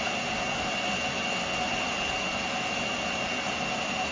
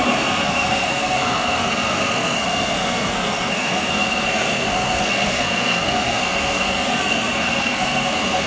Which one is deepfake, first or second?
second